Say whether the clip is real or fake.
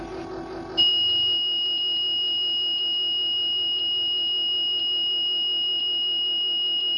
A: real